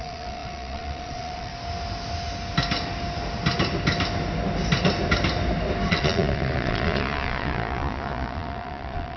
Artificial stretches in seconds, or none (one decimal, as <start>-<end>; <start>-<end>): 0.0-1.5; 5.9-9.2